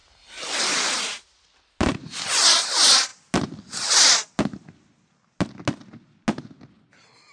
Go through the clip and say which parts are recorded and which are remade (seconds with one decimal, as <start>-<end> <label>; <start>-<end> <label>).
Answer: 0.0-7.3 recorded